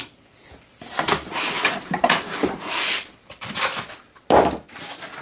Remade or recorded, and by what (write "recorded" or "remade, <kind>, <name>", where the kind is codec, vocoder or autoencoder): recorded